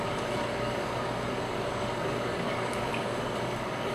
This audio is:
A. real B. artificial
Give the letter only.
B